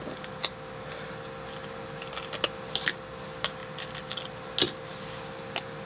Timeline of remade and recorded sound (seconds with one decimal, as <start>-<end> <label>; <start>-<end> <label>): 0.0-5.9 recorded

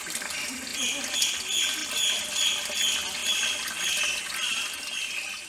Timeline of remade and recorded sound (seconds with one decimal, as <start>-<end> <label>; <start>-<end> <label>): 0.0-5.5 recorded

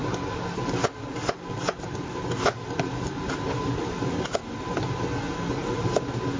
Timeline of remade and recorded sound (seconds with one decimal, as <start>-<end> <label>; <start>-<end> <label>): 0.0-6.4 recorded

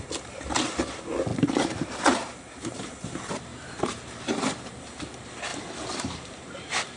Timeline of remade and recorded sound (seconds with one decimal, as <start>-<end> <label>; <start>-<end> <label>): 0.0-1.3 recorded; 1.3-2.9 remade; 2.9-3.5 recorded; 3.5-5.0 remade; 5.0-5.5 recorded; 5.5-7.0 remade